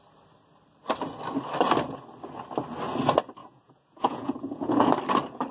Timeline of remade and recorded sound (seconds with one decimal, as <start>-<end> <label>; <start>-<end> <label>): 0.0-3.4 recorded; 3.4-4.9 remade; 4.9-5.5 recorded

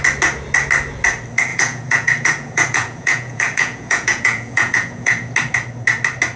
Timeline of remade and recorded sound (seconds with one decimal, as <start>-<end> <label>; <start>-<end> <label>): 0.0-1.5 recorded; 1.5-5.3 remade; 5.3-6.4 recorded